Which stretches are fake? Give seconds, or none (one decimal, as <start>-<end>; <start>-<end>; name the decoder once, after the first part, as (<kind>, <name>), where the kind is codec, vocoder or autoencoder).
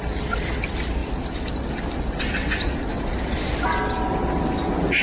none